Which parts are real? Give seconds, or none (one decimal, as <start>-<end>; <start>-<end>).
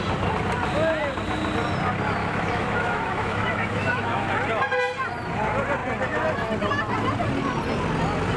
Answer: 0.0-2.2; 4.3-8.4